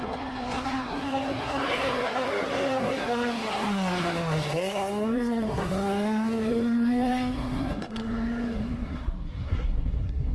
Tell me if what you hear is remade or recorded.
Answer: remade